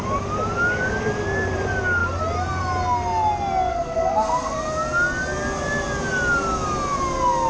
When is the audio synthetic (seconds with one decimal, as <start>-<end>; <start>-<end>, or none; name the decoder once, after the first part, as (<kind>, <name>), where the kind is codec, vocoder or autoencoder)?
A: 3.7-4.6 (codec, SNAC)